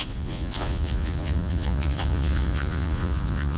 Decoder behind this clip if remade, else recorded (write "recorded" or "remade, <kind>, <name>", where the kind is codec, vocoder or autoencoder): remade, vocoder, Vocos